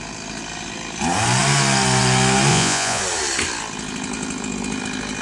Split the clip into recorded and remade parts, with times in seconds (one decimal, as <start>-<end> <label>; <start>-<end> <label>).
0.0-2.5 recorded; 2.5-3.0 remade; 3.0-5.2 recorded